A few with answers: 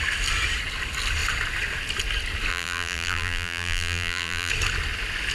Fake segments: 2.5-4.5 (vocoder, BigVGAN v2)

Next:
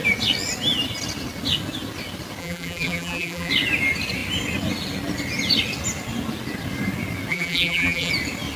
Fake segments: 2.4-3.5 (vocoder, BigVGAN v2); 7.3-8.1

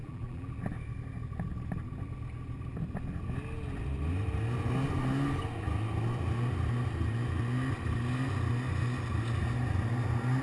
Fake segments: 0.0-0.5 (vocoder, BigVGAN v2)

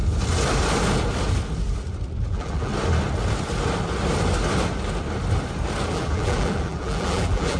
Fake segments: 2.3-2.7 (vocoder, BigVGAN v2); 5.9-7.6